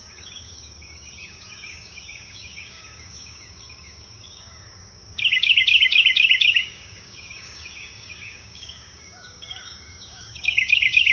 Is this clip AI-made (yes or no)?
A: yes